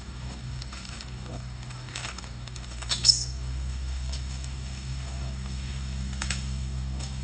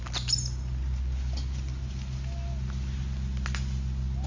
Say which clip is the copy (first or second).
first